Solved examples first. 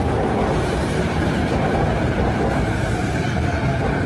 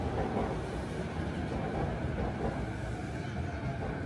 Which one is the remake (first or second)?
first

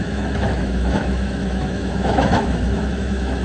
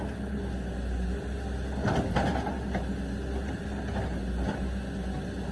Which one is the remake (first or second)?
first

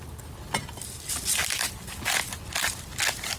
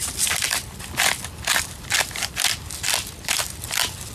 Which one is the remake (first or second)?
second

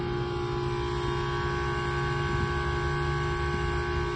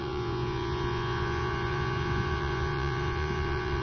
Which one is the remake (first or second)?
second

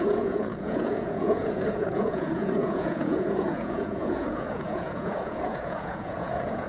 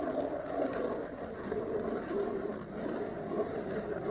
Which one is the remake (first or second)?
first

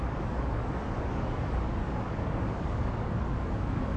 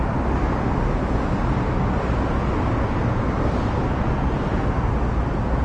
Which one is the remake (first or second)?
first